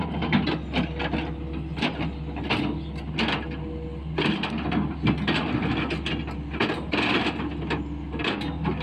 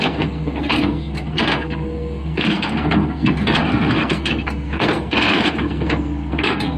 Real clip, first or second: first